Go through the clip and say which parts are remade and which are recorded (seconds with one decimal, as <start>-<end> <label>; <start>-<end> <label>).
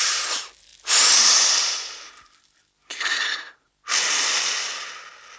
0.0-3.1 recorded; 3.1-3.7 remade; 3.7-5.4 recorded